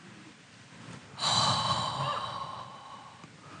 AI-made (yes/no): no